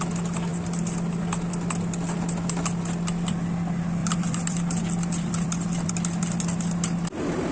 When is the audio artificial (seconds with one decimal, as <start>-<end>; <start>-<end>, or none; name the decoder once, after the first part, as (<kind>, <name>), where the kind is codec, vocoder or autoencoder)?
4.0-5.9 (vocoder, BigVGAN v2)